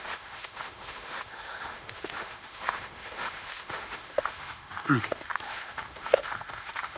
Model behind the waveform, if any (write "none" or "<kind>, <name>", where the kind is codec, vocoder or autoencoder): autoencoder, DAC-VAE